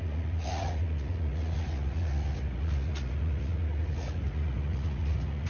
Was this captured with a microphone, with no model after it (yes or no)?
no